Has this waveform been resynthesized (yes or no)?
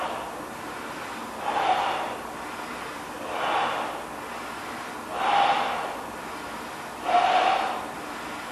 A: no